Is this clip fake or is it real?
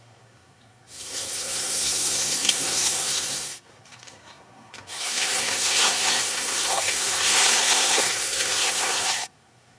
fake